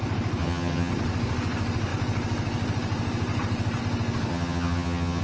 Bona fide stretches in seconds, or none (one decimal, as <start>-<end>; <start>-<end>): 0.0-0.4; 0.9-4.3